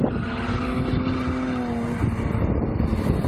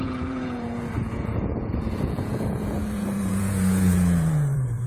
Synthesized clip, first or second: second